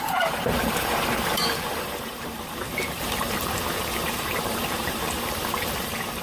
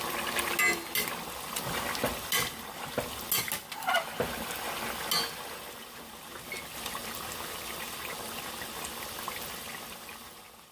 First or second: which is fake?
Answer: first